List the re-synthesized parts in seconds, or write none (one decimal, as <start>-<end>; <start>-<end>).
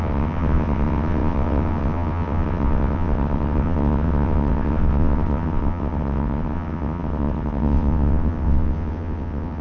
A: 0.0-9.6